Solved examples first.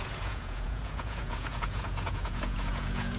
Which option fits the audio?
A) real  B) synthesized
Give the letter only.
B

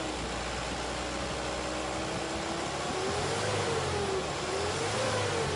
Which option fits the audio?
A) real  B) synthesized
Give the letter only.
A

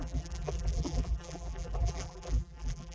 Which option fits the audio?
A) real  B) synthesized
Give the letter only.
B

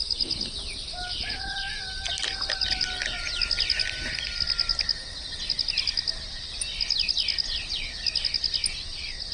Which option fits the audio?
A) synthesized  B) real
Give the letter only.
B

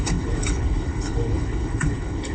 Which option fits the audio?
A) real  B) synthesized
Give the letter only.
B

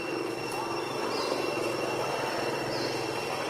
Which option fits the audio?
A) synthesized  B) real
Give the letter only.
B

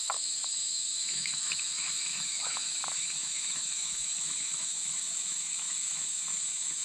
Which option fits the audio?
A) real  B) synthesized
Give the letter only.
B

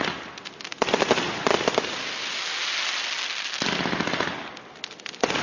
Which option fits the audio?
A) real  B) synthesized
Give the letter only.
A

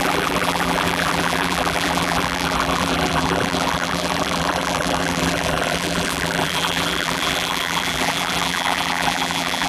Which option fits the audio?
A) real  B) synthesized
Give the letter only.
B